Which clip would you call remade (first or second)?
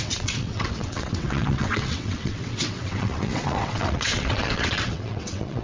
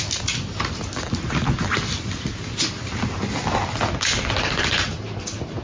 first